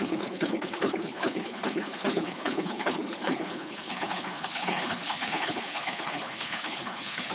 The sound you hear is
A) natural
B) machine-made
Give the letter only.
B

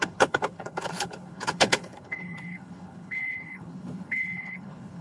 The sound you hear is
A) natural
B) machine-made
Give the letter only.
B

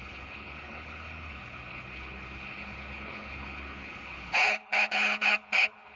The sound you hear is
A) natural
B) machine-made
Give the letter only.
B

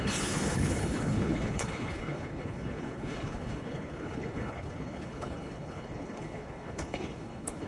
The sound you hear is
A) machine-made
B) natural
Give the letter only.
A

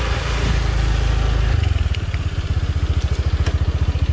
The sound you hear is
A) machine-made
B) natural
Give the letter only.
B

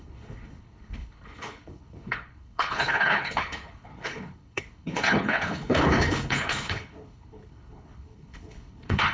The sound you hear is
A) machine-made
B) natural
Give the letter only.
A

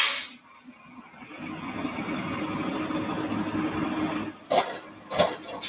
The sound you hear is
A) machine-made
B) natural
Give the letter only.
B